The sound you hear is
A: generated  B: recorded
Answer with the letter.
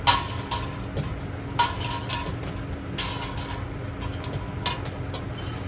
B